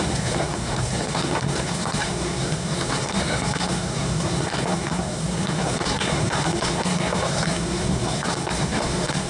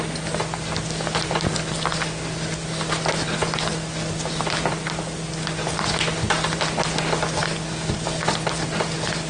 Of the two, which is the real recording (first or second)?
second